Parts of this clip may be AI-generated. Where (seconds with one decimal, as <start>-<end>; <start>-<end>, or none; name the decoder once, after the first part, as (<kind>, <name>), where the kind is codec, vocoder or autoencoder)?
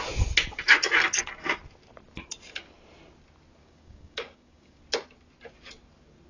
3.6-4.8 (codec, DAC)